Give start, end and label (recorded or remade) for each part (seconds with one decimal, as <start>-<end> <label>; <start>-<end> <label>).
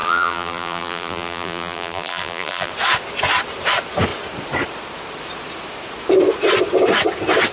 0.0-2.7 remade; 2.7-7.5 recorded